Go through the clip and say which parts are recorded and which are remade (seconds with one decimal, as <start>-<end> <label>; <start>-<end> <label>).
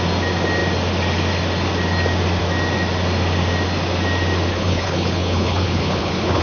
0.0-4.5 recorded; 4.5-6.4 remade